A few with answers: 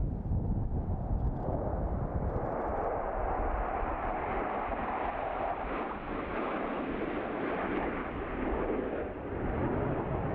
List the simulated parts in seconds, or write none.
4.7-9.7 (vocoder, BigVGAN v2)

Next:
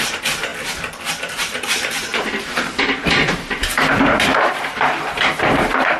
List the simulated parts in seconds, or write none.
0.0-0.5 (vocoder, BigVGAN v2); 1.1-6.0

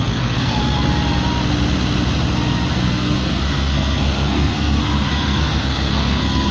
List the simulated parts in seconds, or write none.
0.0-0.6 (codec, SNAC); 2.7-6.5

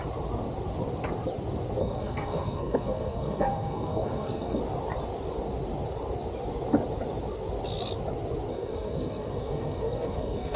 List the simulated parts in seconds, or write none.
1.8-4.6 (codec, SNAC); 8.5-10.6

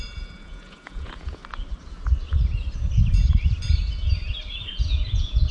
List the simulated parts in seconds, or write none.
0.0-1.4 (vocoder, Vocos); 4.7-5.5